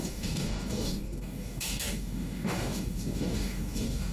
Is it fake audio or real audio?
fake